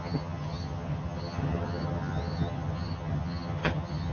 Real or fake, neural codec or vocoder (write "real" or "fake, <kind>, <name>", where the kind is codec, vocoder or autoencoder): fake, vocoder, HiFi-GAN